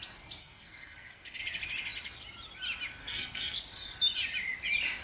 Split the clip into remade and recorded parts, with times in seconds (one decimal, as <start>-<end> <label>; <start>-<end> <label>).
0.0-0.4 recorded; 0.4-1.4 remade; 1.4-3.0 recorded; 3.0-3.6 remade; 3.6-5.0 recorded